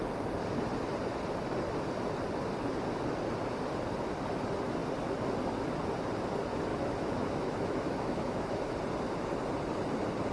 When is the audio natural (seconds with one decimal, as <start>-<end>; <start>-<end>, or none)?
0.0-6.7; 8.8-10.3